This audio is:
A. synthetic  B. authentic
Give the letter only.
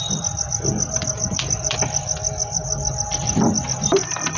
A